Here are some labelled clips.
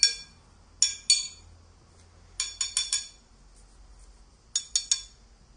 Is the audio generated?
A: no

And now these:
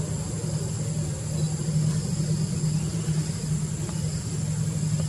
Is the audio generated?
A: no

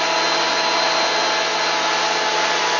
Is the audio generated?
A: no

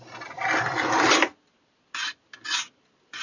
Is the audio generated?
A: no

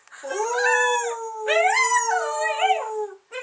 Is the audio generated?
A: no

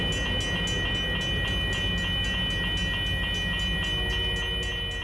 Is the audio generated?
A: no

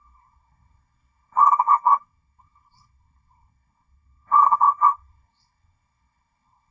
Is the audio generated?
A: yes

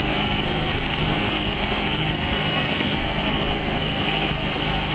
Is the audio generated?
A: yes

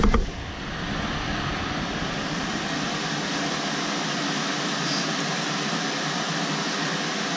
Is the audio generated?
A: no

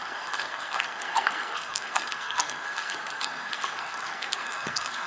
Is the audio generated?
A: yes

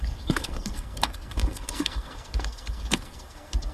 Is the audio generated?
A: yes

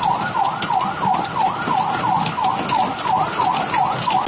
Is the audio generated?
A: no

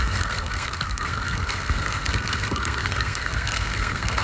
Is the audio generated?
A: yes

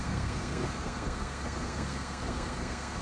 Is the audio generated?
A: yes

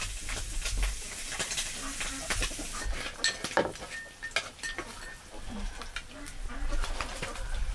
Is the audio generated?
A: no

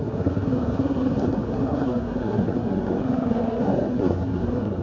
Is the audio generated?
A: yes